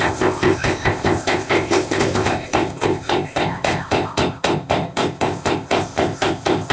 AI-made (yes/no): yes